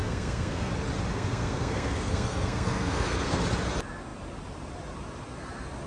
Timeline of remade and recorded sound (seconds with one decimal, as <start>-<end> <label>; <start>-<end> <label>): 0.0-0.7 remade; 0.7-1.1 recorded; 1.1-3.4 remade; 3.4-5.9 recorded